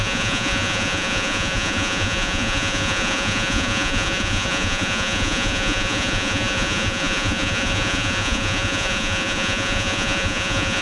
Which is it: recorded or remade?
remade